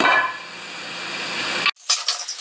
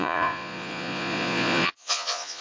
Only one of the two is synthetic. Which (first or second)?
second